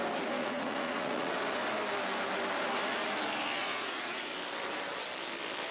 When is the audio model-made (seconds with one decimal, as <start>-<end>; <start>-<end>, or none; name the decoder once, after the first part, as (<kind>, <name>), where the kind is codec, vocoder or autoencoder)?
0.4-1.3 (vocoder, Vocos); 3.6-4.3